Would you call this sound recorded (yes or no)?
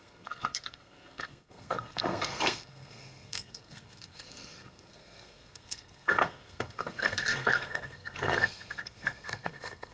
no